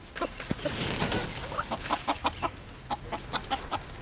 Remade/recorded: recorded